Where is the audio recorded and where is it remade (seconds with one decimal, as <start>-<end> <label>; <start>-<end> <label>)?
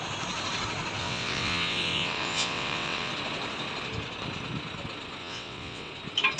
0.0-1.0 recorded; 1.0-3.1 remade; 3.1-5.2 recorded; 5.2-5.9 remade; 5.9-6.4 recorded